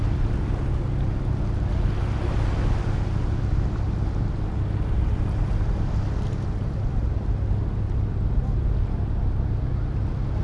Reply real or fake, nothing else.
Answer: real